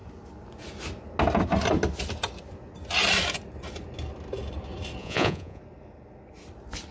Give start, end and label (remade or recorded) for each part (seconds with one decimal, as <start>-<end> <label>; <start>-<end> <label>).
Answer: 0.0-5.0 recorded; 5.0-5.6 remade; 5.6-6.9 recorded